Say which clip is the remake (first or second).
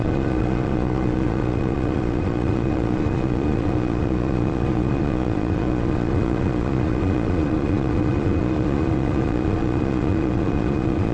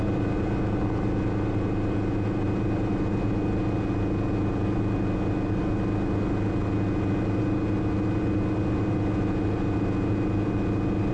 first